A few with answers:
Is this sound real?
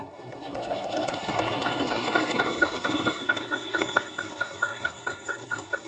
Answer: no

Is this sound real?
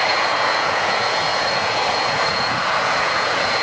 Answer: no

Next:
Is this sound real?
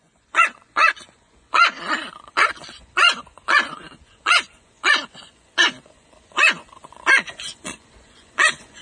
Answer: no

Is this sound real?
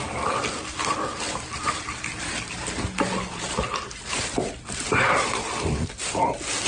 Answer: yes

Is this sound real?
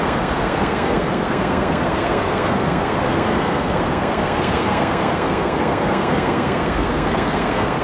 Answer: no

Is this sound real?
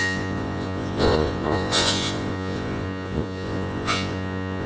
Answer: no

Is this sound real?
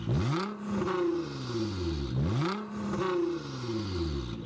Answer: yes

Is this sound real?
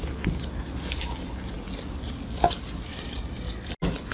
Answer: yes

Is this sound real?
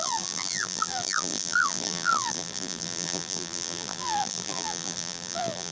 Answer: no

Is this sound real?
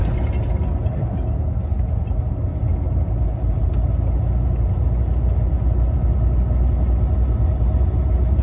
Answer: yes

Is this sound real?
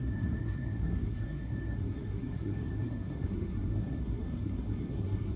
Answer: no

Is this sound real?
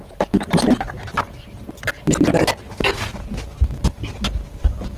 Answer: yes